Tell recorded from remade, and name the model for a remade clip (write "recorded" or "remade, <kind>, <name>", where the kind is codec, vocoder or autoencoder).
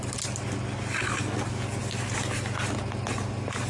recorded